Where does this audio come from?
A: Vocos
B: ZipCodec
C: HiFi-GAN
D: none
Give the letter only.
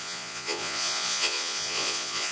A